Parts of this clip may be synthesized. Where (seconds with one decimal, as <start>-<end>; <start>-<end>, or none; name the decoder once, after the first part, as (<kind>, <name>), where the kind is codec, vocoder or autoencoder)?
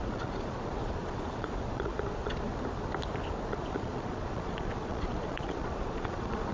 0.0-2.5 (vocoder, Vocos); 3.5-6.5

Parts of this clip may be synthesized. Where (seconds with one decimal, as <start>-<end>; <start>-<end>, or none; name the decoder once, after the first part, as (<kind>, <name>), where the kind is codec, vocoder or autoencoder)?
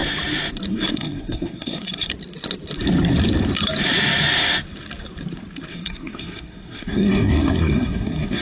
0.7-2.1 (codec, SNAC); 5.7-8.4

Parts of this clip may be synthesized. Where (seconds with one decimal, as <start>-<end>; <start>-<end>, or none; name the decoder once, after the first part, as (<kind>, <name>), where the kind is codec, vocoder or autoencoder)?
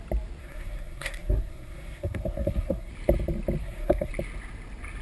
0.4-2.9 (codec, SNAC); 3.6-4.1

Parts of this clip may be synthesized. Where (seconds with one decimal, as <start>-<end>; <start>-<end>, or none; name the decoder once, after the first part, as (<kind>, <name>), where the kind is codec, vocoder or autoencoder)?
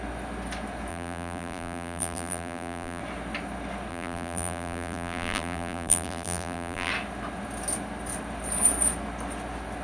0.9-3.0 (vocoder, BigVGAN v2); 3.9-6.9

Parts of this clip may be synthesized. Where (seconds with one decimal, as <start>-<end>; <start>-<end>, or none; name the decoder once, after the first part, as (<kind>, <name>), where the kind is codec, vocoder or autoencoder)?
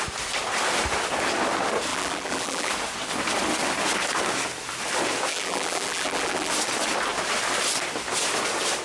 1.9-2.7 (vocoder, BigVGAN v2); 5.3-6.5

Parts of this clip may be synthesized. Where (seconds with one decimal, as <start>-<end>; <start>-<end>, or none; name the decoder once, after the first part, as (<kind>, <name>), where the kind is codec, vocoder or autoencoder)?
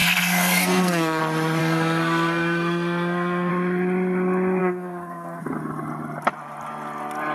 0.0-1.2 (codec, SNAC); 1.6-3.5; 4.6-5.4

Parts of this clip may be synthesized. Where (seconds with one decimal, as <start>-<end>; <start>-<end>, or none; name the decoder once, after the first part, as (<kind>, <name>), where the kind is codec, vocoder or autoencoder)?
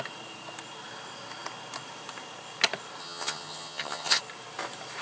3.0-4.2 (vocoder, HiFi-GAN)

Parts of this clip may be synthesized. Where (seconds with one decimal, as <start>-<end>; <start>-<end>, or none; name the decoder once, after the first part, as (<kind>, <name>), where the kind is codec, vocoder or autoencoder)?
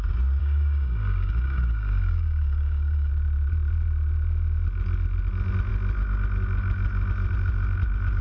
0.4-3.1 (codec, DAC)